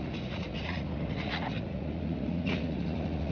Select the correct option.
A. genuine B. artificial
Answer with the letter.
B